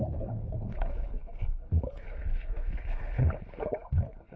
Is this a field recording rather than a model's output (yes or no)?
no